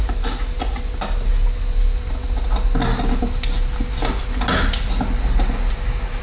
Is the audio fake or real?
real